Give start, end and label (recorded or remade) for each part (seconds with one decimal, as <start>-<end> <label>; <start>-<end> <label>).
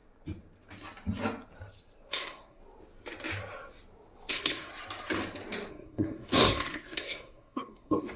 0.0-2.1 recorded; 2.1-2.6 remade; 2.6-4.3 recorded; 4.3-4.7 remade; 4.7-5.7 recorded; 5.7-8.2 remade